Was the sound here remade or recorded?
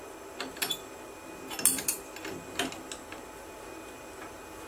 recorded